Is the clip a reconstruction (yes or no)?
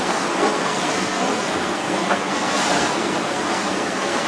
yes